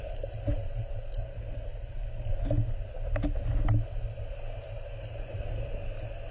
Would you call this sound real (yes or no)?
yes